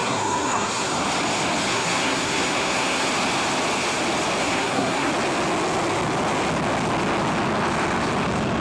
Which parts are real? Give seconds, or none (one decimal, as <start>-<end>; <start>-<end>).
0.9-1.7; 3.1-4.4; 5.1-8.6